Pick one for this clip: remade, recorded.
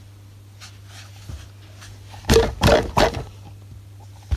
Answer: recorded